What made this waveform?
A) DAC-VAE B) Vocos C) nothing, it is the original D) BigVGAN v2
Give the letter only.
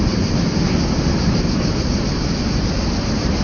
C